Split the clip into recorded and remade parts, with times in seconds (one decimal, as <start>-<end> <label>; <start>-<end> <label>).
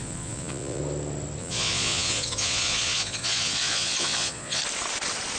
0.0-0.8 remade; 0.8-1.4 recorded; 1.4-4.6 remade; 4.6-5.4 recorded